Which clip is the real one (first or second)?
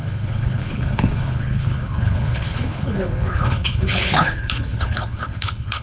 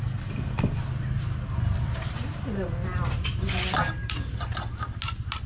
second